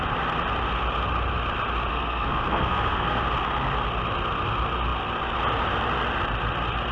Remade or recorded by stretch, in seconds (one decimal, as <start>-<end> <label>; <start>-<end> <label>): 0.0-1.9 recorded; 1.9-3.2 remade; 3.2-6.9 recorded